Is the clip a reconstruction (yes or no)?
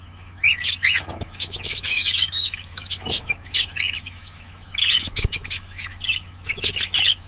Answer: yes